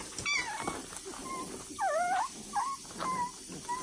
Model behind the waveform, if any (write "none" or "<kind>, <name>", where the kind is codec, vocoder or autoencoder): none